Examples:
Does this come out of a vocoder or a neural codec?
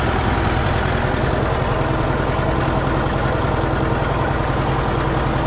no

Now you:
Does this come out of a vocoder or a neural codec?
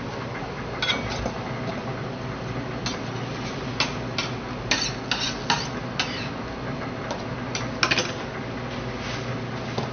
no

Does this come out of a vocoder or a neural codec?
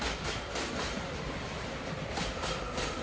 no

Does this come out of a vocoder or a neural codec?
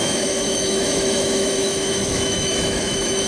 yes